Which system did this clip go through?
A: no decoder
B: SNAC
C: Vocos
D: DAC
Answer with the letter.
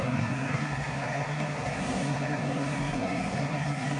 B